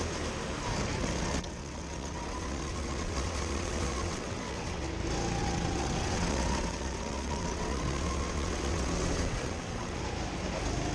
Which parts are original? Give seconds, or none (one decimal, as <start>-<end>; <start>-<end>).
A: 0.0-1.0; 4.9-5.4; 10.0-10.9